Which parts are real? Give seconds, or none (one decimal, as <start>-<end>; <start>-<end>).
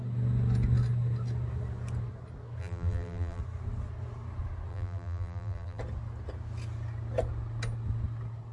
0.0-2.6; 3.4-4.7; 5.8-8.5